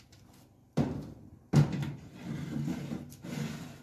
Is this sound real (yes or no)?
yes